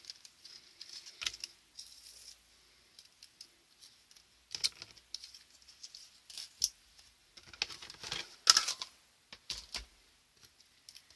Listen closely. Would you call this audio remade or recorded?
recorded